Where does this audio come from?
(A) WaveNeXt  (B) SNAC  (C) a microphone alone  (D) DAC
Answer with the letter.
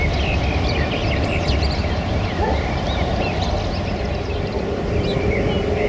C